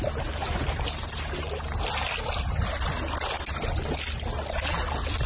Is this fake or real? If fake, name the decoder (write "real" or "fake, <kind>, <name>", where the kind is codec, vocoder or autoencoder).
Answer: real